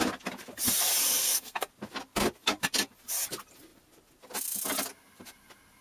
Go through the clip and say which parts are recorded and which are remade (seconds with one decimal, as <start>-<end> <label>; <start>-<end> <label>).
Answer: 0.0-1.2 recorded; 1.2-1.7 remade; 1.7-5.8 recorded